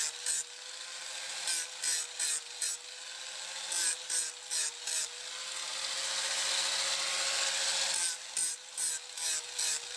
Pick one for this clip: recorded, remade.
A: recorded